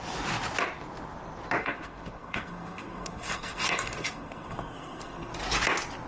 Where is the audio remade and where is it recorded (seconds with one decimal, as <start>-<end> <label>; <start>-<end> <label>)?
0.0-1.6 recorded; 1.6-5.3 remade; 5.3-6.1 recorded